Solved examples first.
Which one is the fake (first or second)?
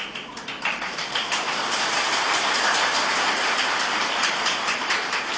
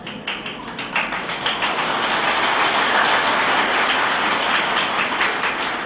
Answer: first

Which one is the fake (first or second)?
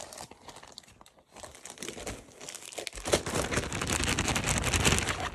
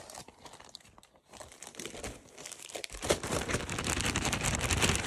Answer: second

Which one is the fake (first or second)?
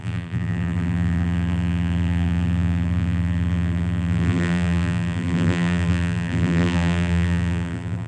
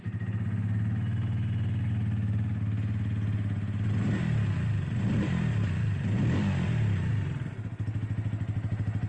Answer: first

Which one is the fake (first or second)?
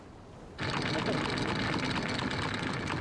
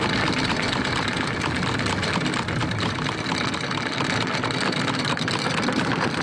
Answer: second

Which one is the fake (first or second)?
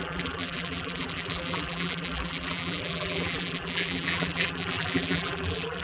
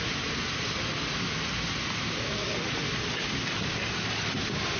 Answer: first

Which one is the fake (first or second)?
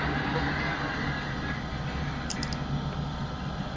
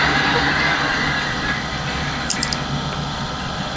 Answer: second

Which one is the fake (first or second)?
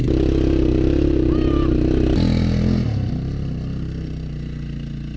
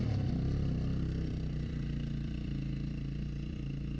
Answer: second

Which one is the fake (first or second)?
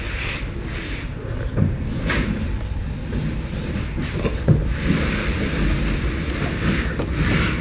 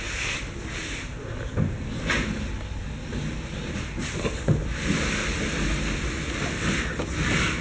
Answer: first